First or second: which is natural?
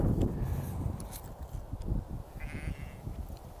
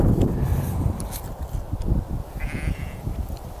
first